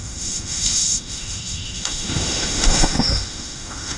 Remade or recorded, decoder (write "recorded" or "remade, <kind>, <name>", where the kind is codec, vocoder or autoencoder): remade, autoencoder, DAC-VAE